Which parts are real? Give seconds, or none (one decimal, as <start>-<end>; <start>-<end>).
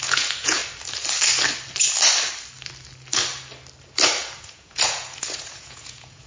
0.6-4.4